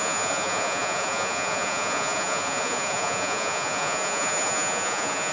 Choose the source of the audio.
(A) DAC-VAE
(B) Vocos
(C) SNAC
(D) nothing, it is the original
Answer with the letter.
B